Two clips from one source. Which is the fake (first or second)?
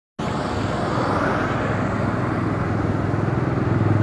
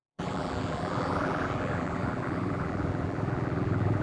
second